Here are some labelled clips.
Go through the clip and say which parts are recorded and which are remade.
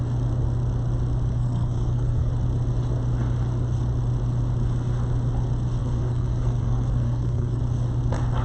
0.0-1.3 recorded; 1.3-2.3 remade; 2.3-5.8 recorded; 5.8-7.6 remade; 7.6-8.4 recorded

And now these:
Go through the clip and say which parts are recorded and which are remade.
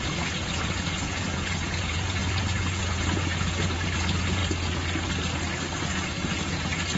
0.0-4.4 remade; 4.4-5.8 recorded; 5.8-7.0 remade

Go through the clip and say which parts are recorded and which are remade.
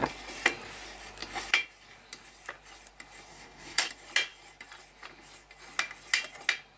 0.0-3.3 recorded; 3.3-3.9 remade; 3.9-6.8 recorded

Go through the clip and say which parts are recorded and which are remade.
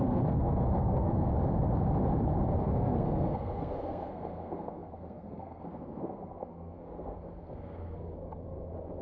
0.0-1.3 remade; 1.3-2.7 recorded; 2.7-8.1 remade; 8.1-9.0 recorded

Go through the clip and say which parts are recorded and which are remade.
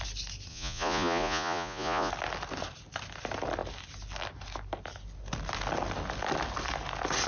0.0-0.5 recorded; 0.5-2.1 remade; 2.1-7.3 recorded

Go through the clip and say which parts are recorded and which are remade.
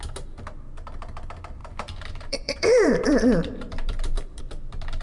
0.0-1.6 recorded; 1.6-4.4 remade; 4.4-5.0 recorded